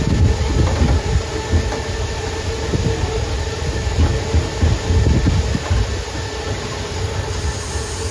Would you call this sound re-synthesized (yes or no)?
no